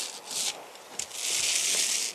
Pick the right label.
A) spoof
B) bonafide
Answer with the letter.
B